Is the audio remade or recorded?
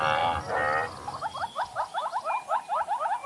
recorded